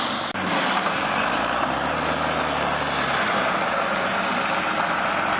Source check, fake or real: real